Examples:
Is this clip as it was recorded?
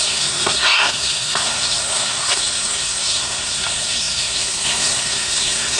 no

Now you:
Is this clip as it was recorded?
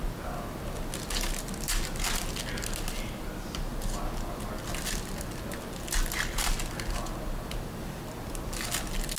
yes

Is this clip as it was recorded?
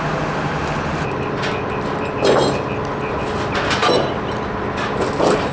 yes